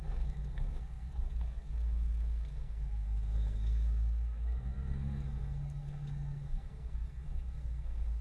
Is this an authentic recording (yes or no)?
no